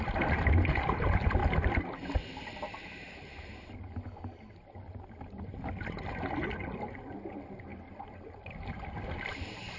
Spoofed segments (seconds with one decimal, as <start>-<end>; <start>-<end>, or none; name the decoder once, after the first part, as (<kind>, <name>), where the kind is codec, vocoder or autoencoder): 7.7-9.3 (vocoder, BigVGAN v2)